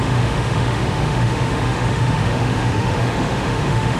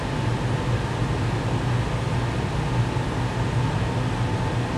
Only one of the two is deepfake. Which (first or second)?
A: first